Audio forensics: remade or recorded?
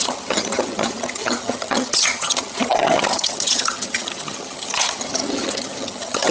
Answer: remade